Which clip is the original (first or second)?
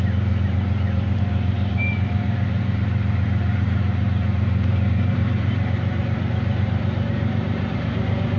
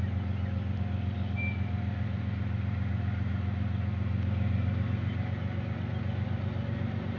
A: second